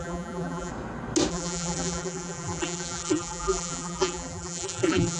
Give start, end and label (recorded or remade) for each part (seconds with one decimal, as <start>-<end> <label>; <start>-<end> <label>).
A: 0.0-0.7 remade; 0.7-1.3 recorded; 1.3-5.2 remade